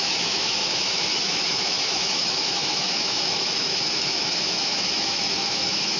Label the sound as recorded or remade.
remade